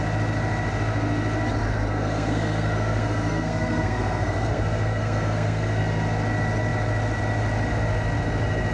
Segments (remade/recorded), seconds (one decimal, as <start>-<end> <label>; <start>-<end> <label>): 0.0-1.7 recorded; 1.7-5.8 remade; 5.8-8.7 recorded